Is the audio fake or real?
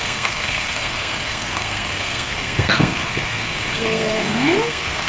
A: fake